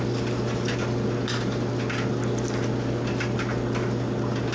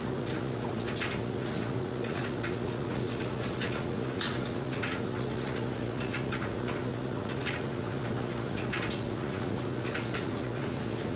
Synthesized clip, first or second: second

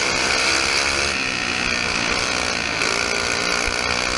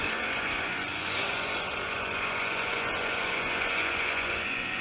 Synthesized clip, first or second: second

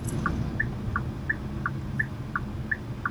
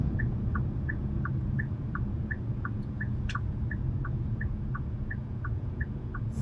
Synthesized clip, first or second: second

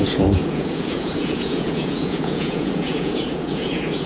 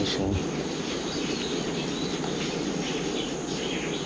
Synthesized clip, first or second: first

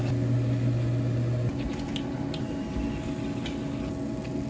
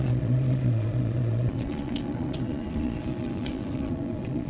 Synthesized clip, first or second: second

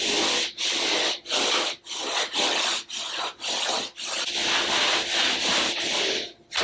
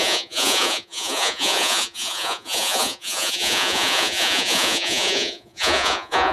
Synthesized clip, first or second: second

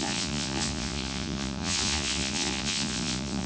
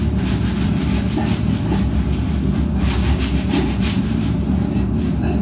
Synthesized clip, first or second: first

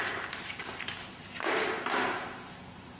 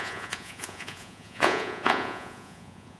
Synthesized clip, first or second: second